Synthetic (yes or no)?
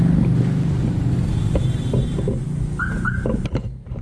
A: no